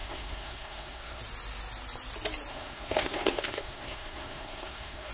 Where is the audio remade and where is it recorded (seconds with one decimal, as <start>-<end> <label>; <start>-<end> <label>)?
0.0-1.2 remade; 1.2-2.5 recorded; 2.5-5.1 remade